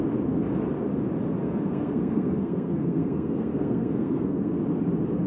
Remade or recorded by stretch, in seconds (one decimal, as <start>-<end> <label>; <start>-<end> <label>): 0.0-1.4 recorded; 1.4-4.6 remade; 4.6-5.3 recorded